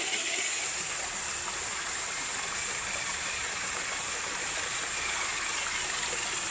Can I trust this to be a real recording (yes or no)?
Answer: yes